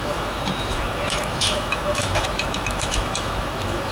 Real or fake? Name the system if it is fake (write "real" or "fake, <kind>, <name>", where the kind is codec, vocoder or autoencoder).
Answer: fake, autoencoder, DAC-VAE